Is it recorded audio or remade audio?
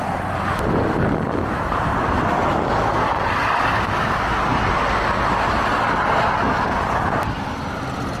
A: recorded